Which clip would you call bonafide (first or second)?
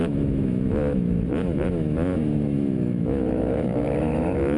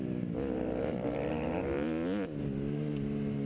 second